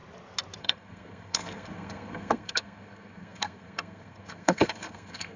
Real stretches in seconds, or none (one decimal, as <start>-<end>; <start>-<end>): 0.0-0.6